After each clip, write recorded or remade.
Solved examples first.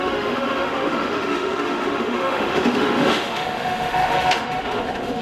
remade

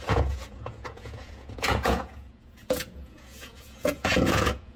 remade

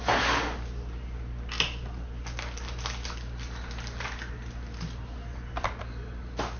recorded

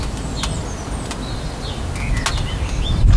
recorded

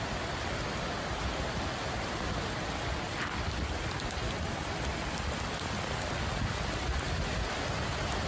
recorded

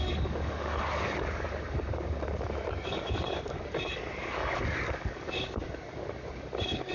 remade